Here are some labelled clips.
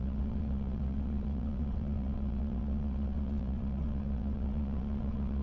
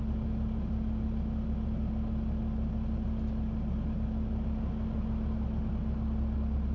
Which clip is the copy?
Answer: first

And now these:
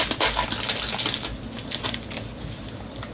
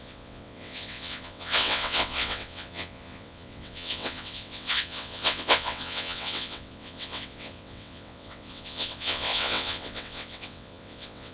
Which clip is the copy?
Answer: second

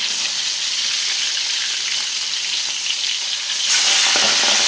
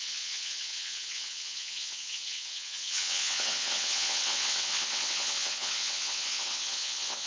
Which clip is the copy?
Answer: second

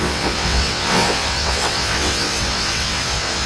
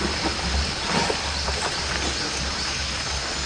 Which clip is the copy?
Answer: first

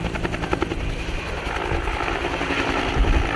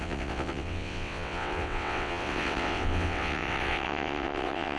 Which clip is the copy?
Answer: second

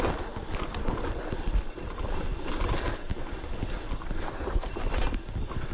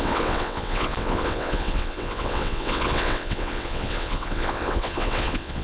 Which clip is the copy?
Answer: second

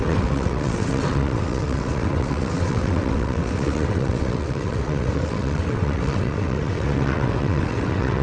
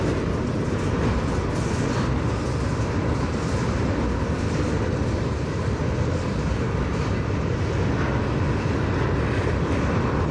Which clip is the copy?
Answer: first